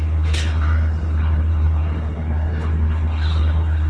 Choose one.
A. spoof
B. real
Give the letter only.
A